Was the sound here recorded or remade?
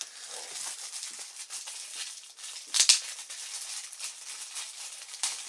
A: recorded